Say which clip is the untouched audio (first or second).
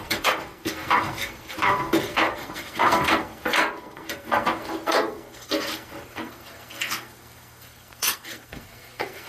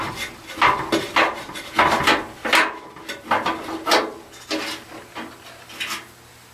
second